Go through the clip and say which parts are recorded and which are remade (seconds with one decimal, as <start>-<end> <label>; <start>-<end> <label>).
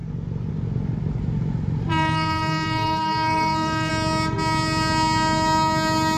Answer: 0.0-1.9 recorded; 1.9-3.9 remade; 3.9-6.2 recorded